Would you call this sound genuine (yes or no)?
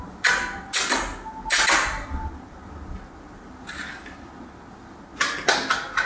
yes